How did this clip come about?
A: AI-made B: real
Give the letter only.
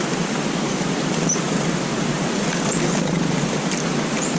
A